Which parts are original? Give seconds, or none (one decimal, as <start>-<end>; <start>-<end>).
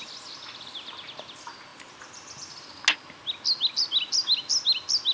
0.0-5.1